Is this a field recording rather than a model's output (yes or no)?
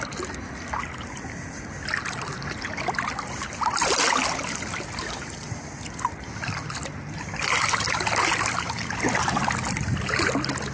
yes